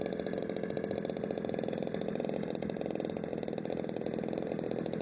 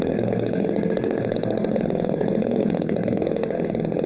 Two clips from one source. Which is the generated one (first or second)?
second